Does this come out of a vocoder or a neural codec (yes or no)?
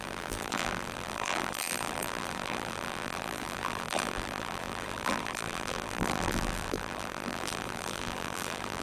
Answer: yes